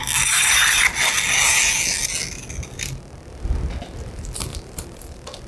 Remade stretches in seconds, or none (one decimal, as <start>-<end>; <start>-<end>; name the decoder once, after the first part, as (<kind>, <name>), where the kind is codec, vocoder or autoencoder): 4.5-5.0 (vocoder, BigVGAN v2)